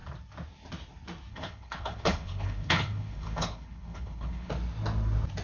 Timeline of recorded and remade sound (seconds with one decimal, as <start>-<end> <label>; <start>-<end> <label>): 0.0-1.3 recorded; 1.3-4.5 remade; 4.5-5.4 recorded